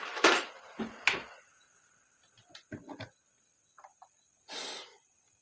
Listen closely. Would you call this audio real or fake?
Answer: real